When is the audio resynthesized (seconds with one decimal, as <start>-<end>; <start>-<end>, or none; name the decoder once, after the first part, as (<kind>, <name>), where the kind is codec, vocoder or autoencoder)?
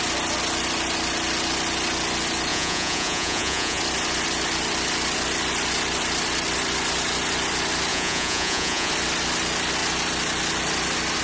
2.5-3.8 (vocoder, Vocos); 7.9-8.9